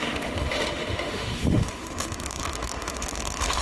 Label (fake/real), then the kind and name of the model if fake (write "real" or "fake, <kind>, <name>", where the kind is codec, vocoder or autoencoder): fake, autoencoder, DAC-VAE